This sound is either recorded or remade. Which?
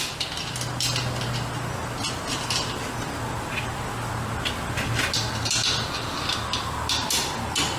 recorded